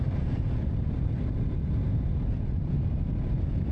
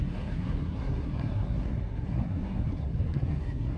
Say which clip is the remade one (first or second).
second